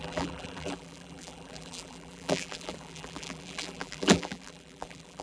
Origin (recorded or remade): remade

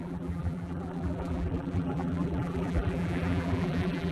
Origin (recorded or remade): remade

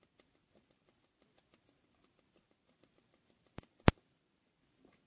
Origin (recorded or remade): remade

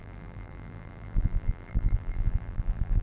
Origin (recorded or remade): remade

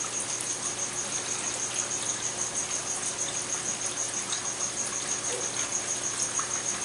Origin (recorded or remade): remade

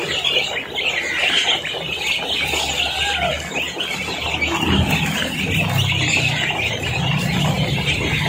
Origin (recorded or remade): recorded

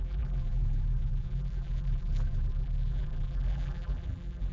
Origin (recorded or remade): remade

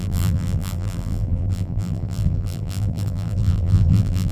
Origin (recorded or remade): remade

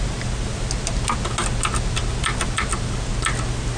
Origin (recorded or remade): recorded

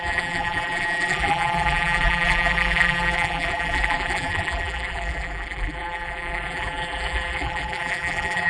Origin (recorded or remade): remade